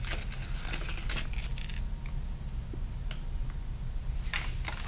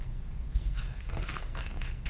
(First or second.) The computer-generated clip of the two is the second